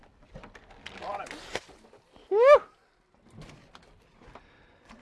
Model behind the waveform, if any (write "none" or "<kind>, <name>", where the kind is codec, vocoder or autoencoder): none